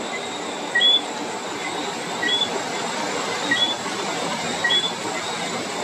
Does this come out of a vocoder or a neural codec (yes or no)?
no